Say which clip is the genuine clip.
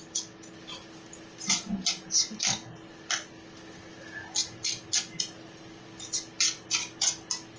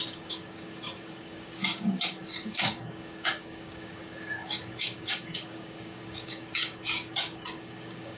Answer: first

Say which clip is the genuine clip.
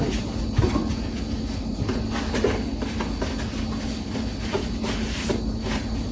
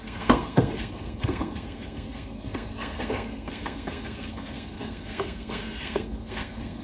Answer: first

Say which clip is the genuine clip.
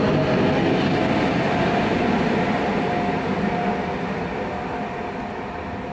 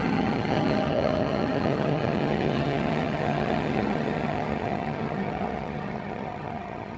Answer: first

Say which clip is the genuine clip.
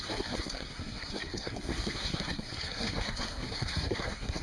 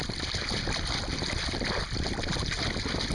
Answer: second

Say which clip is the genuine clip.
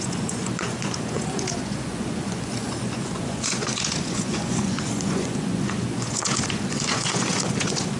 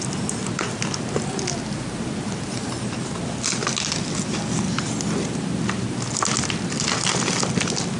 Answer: second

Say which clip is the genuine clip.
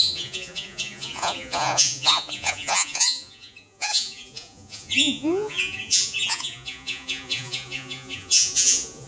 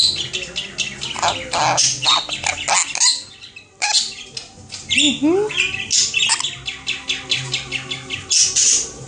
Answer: second